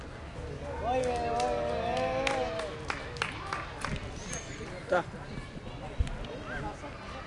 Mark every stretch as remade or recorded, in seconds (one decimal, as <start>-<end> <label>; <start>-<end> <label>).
0.0-7.3 recorded